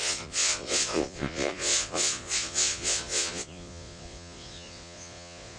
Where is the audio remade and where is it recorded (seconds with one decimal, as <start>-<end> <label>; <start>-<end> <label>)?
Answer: 0.0-5.6 remade